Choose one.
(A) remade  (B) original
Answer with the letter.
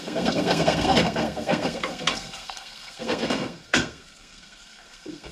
A